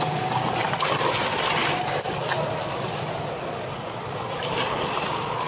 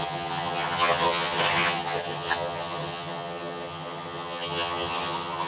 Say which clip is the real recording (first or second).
first